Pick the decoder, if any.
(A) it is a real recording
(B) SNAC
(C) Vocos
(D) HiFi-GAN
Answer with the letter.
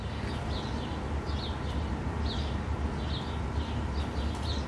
A